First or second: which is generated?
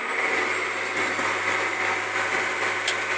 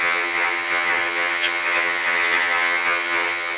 second